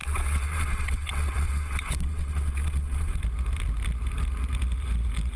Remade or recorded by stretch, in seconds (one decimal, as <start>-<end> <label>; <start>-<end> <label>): 0.0-3.2 remade; 3.2-5.4 recorded